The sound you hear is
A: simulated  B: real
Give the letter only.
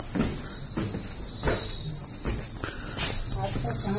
B